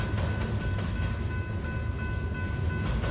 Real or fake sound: real